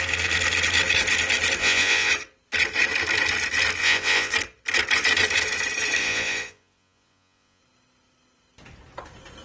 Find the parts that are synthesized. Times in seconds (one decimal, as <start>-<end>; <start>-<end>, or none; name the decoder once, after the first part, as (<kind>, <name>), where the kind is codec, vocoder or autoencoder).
1.6-2.1 (vocoder, Vocos); 3.8-4.3; 6.0-7.6